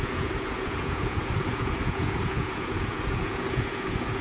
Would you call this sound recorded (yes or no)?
no